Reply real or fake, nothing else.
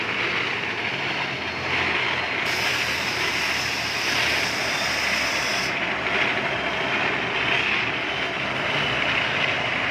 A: real